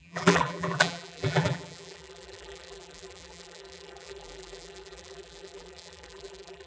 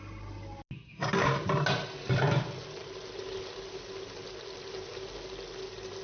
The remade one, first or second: first